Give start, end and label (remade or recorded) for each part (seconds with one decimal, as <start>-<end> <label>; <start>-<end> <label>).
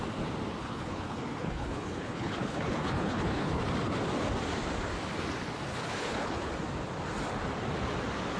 0.0-0.6 recorded; 0.6-3.6 remade; 3.6-5.7 recorded; 5.7-6.5 remade; 6.5-8.4 recorded